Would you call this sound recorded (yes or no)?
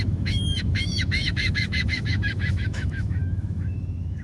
no